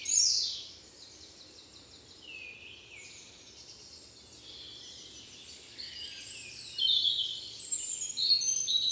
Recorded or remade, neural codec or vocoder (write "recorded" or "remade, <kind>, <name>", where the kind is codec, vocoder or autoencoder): recorded